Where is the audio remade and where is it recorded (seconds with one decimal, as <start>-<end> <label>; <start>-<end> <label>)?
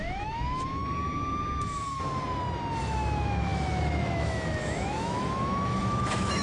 0.0-0.8 remade; 0.8-2.8 recorded; 2.8-6.4 remade